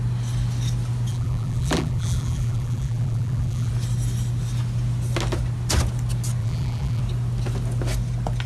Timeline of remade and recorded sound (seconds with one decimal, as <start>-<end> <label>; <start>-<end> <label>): 0.0-1.1 recorded; 1.1-3.7 remade; 3.7-6.4 recorded; 6.4-7.0 remade; 7.0-8.5 recorded